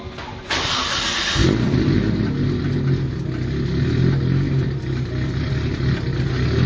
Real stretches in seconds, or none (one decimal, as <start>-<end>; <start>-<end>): 0.0-6.7